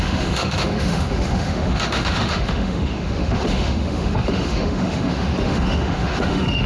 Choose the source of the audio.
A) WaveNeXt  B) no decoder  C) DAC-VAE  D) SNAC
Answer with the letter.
C